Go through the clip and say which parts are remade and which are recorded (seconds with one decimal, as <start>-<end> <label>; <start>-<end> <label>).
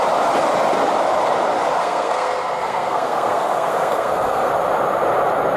0.0-1.8 recorded; 1.8-4.5 remade; 4.5-5.6 recorded